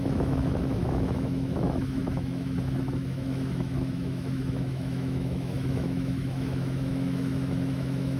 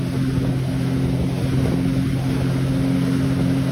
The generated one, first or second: first